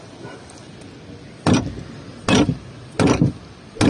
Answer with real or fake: real